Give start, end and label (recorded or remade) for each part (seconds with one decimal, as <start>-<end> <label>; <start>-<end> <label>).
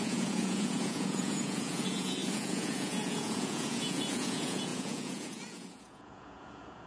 0.0-6.9 remade